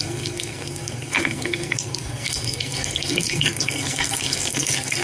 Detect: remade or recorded remade